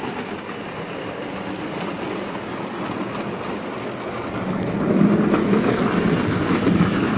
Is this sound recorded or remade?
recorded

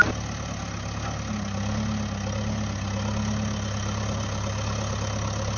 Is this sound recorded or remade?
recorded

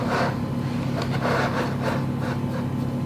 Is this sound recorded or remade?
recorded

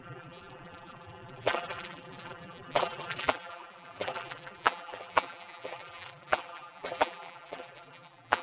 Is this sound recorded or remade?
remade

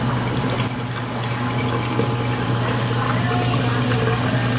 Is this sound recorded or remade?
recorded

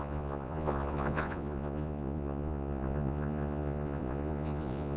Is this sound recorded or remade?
remade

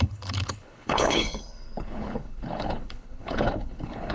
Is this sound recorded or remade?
remade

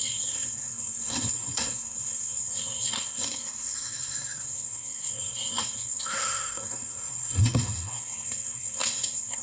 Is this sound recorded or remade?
remade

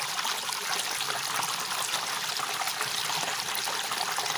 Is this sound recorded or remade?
recorded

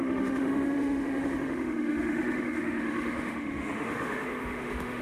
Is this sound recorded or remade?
remade